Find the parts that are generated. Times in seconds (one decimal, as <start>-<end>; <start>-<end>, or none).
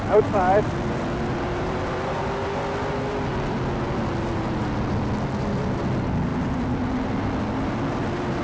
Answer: none